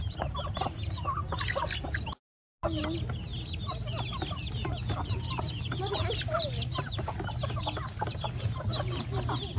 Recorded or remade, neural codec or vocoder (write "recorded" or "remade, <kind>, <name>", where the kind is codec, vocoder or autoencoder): recorded